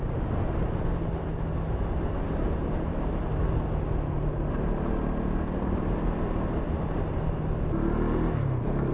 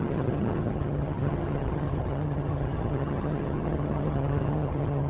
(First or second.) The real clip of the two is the first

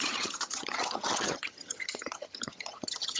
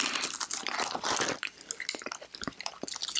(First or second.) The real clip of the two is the second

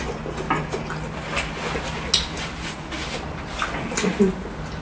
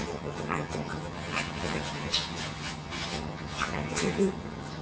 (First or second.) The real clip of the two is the first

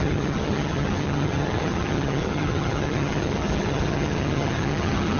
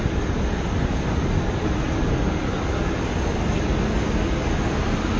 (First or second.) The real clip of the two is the second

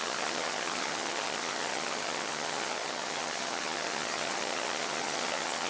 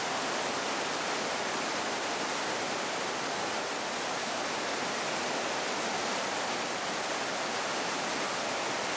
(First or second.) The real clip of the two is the second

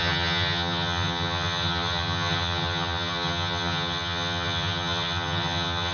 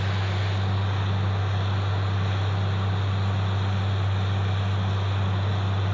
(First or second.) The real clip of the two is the second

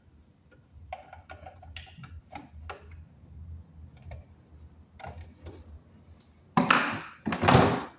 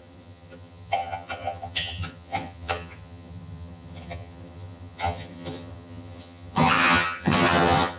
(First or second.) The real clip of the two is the first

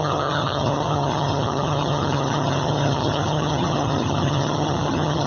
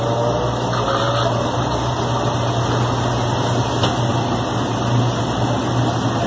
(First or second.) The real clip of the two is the second